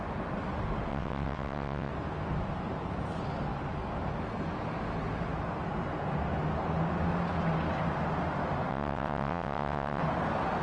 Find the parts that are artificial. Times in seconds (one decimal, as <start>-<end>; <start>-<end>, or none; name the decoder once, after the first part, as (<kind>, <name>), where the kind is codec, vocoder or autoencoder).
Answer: 0.9-1.9 (vocoder, WaveNeXt); 8.7-10.0

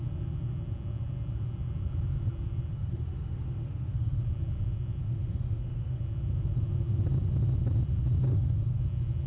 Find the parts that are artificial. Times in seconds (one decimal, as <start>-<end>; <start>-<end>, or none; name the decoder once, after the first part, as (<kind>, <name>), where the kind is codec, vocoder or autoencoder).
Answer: 2.7-4.2 (autoencoder, DAC-VAE); 5.0-6.0; 8.3-8.8

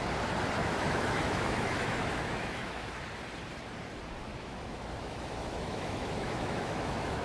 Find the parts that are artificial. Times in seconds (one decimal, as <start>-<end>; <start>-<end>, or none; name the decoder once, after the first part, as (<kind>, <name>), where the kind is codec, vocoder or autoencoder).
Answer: 0.6-2.9 (autoencoder, DAC-VAE); 4.3-7.2

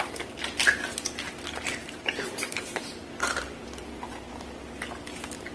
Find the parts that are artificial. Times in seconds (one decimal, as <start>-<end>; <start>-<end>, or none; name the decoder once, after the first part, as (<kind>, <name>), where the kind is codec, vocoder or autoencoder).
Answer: 1.8-4.3 (vocoder, BigVGAN v2)

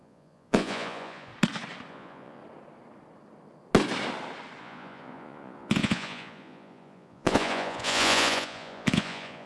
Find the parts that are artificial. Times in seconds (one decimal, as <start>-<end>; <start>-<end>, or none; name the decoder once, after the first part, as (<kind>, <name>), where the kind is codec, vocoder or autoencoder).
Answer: 0.0-1.3 (vocoder, Vocos); 1.9-2.4; 4.6-9.5

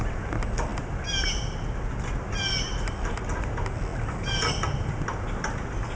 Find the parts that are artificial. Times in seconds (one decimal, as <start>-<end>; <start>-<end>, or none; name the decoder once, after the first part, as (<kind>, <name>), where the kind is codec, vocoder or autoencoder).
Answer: none